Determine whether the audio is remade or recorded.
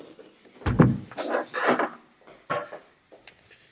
recorded